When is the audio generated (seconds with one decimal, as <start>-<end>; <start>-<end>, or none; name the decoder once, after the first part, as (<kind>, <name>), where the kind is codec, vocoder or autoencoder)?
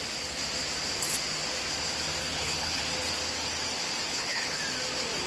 2.2-2.8 (codec, HILCodec); 4.1-4.6